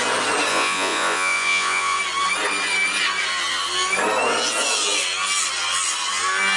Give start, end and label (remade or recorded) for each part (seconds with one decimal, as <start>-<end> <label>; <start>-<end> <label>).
0.0-0.5 recorded; 0.5-2.0 remade; 2.0-6.6 recorded